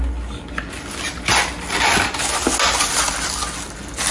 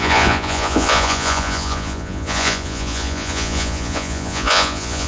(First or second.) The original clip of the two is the first